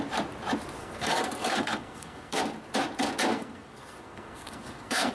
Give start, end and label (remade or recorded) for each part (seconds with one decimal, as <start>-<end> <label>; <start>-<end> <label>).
0.0-0.8 recorded; 0.8-2.4 remade; 2.4-3.3 recorded; 3.3-5.1 remade